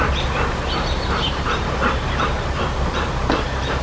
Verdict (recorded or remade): remade